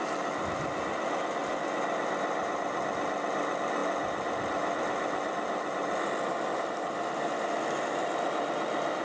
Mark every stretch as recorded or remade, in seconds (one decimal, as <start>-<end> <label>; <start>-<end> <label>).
0.0-9.0 recorded